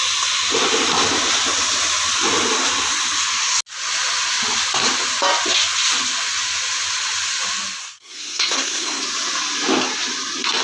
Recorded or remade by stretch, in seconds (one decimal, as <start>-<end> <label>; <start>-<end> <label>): 0.0-7.8 recorded; 7.8-9.0 remade; 9.0-10.6 recorded